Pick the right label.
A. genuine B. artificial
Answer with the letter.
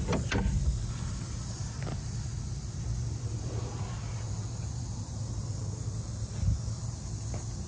A